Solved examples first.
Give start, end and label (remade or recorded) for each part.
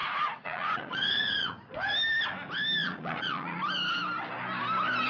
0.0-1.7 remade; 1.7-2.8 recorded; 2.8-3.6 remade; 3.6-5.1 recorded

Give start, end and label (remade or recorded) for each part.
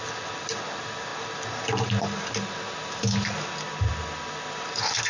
0.0-5.1 recorded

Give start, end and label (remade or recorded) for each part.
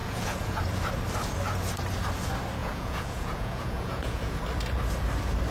0.0-0.6 remade; 0.6-2.6 recorded; 2.6-4.4 remade; 4.4-5.5 recorded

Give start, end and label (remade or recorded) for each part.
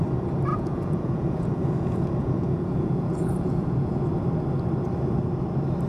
0.0-0.5 recorded; 0.5-4.0 remade; 4.0-5.9 recorded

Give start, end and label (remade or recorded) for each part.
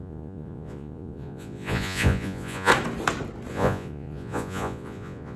0.0-2.7 remade; 2.7-3.5 recorded; 3.5-5.4 remade